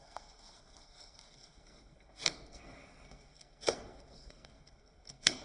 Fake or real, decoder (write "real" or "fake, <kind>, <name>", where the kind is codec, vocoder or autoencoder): fake, codec, SNAC